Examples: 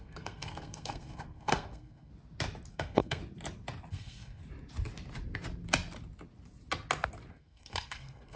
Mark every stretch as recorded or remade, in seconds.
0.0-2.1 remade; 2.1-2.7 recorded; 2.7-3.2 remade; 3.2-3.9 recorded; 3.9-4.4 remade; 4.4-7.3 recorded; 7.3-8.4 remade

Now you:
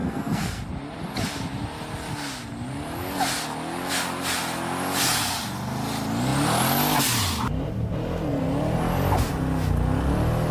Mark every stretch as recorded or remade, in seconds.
0.0-0.6 remade; 0.6-10.5 recorded

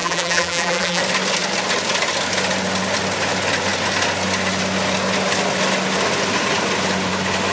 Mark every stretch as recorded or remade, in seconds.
0.0-1.0 remade; 1.0-7.5 recorded

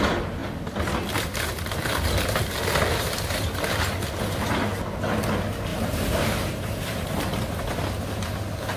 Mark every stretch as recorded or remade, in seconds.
0.0-5.7 recorded; 5.7-7.5 remade; 7.5-8.8 recorded

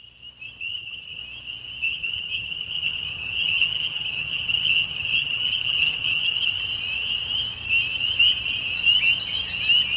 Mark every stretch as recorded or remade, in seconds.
0.0-0.6 recorded; 0.6-1.2 remade; 1.2-1.8 recorded; 1.8-6.6 remade; 6.6-10.0 recorded

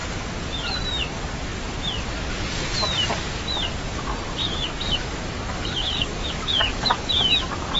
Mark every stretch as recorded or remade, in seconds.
0.0-4.4 recorded; 4.4-7.1 remade; 7.1-7.8 recorded